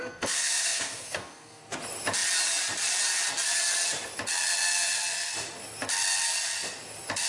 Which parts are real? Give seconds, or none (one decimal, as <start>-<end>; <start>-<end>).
1.6-7.3